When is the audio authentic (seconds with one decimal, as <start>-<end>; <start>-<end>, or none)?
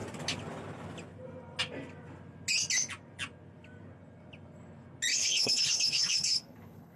0.0-5.1